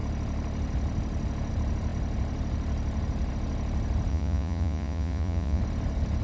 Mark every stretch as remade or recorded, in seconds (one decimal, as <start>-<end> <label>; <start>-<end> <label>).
0.0-4.1 recorded; 4.1-5.6 remade; 5.6-6.2 recorded